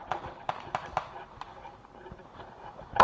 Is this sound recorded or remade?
recorded